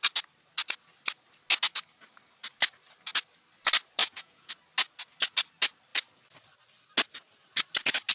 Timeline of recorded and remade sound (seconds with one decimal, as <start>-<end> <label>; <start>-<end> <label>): 0.0-4.0 recorded; 4.0-4.5 remade; 4.5-8.1 recorded